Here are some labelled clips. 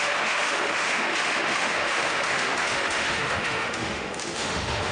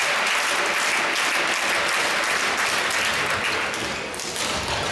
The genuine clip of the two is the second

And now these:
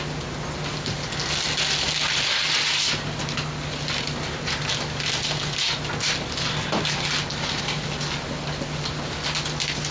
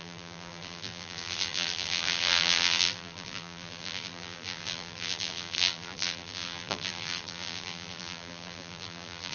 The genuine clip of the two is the first